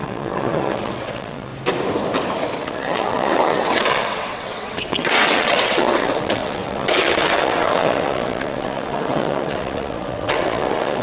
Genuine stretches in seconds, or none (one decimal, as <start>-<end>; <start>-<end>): 1.5-2.6